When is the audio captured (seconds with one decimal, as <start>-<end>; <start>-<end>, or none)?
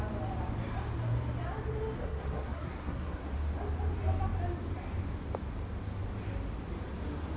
0.0-2.0; 3.3-7.4